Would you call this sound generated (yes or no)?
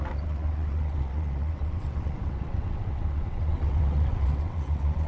yes